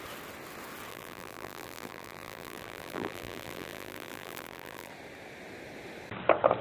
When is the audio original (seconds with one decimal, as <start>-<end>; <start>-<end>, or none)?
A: 0.0-0.9; 4.9-6.6